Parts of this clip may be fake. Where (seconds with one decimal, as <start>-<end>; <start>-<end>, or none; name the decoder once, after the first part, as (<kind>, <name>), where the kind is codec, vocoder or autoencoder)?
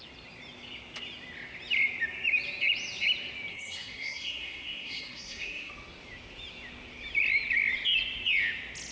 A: 3.5-5.7 (codec, SNAC)